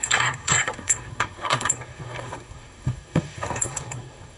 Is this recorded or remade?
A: remade